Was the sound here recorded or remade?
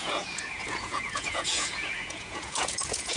remade